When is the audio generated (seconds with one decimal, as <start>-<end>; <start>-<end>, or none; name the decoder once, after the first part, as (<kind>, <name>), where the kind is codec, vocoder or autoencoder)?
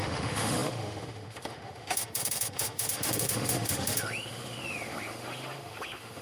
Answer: 0.0-6.2 (autoencoder, DAC-VAE)